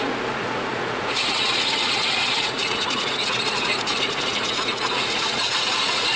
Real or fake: fake